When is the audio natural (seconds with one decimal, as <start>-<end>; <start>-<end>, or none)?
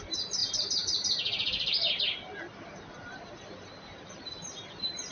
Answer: 0.0-0.4; 2.0-3.9